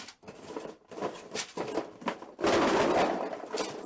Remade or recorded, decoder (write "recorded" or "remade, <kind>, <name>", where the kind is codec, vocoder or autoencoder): recorded